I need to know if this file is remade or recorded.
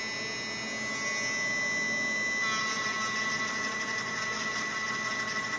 recorded